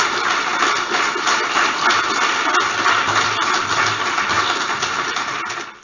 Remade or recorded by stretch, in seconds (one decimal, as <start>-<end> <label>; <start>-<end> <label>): 0.0-5.8 recorded